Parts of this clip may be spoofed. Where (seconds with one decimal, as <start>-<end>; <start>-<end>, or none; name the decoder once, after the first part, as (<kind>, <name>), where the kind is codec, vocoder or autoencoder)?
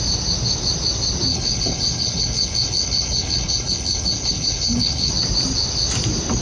1.3-5.1 (codec, HILCodec)